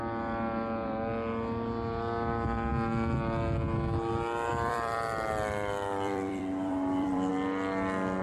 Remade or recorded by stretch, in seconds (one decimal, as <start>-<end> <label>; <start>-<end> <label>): 0.0-4.5 recorded; 4.5-7.3 remade; 7.3-8.2 recorded